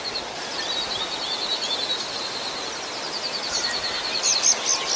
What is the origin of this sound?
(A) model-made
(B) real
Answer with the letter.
B